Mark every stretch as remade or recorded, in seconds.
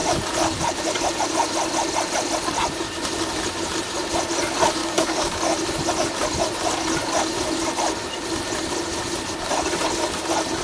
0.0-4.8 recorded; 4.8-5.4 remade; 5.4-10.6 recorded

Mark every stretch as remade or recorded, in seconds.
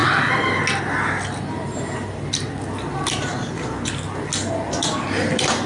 0.0-5.7 recorded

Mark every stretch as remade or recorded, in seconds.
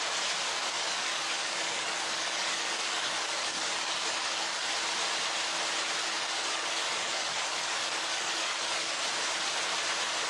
0.0-0.5 recorded; 0.5-4.7 remade; 4.7-6.0 recorded; 6.0-9.0 remade; 9.0-10.3 recorded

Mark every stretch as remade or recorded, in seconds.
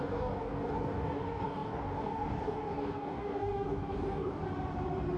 0.0-4.4 remade; 4.4-5.2 recorded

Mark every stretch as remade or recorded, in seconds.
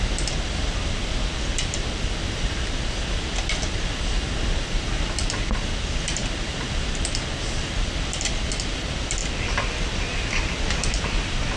0.0-11.6 recorded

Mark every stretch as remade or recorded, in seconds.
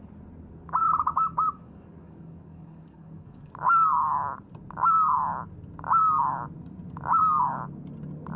0.0-0.8 recorded; 0.8-3.5 remade; 3.5-8.4 recorded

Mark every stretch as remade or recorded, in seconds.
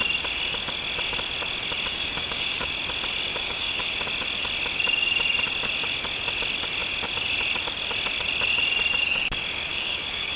0.0-1.9 recorded; 1.9-2.7 remade; 2.7-3.3 recorded; 3.3-3.9 remade; 3.9-9.7 recorded; 9.7-10.4 remade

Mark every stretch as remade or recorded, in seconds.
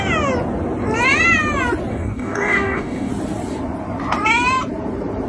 0.0-1.9 recorded; 1.9-3.1 remade; 3.1-5.3 recorded